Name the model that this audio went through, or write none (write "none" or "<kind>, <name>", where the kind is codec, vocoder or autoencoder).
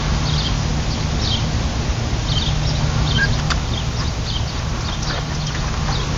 none